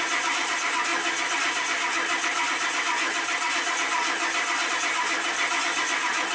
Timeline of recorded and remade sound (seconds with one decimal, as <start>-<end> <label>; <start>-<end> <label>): 0.0-6.3 recorded

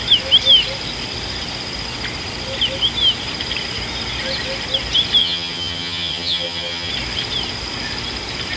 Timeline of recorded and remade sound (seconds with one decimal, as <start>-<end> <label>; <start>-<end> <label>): 0.0-5.2 recorded; 5.2-6.9 remade; 6.9-8.6 recorded

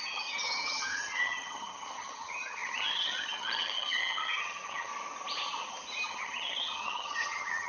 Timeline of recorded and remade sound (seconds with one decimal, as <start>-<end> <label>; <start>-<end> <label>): 0.0-4.9 remade; 4.9-6.1 recorded; 6.1-7.7 remade